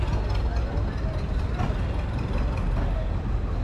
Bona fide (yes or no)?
yes